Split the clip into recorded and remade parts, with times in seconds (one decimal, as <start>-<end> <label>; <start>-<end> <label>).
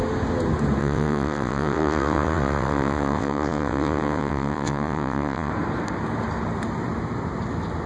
0.0-0.8 recorded; 0.8-5.5 remade; 5.5-7.9 recorded